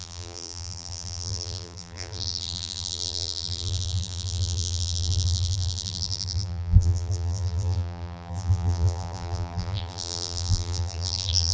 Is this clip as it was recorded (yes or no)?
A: no